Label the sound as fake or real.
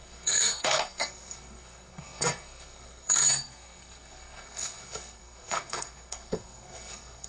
fake